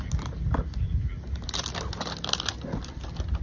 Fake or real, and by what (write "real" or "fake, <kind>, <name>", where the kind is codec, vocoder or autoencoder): real